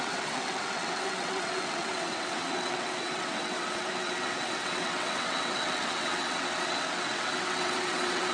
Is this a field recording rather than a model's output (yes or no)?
no